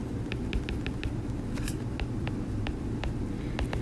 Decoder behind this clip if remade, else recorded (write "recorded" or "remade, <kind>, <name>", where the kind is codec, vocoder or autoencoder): remade, vocoder, BigVGAN v2